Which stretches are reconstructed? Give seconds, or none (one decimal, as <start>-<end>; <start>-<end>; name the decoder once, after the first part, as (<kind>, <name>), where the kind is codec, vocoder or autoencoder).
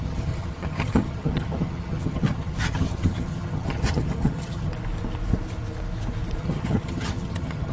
0.0-4.7 (vocoder, HiFi-GAN); 6.4-7.7